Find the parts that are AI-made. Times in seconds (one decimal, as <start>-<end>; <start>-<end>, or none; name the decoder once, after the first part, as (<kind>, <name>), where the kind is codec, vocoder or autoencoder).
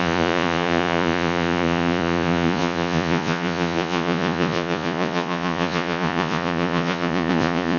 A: 0.0-7.8 (vocoder, Vocos)